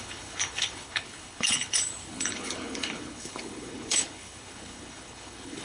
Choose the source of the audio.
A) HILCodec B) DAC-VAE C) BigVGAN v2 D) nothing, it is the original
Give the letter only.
A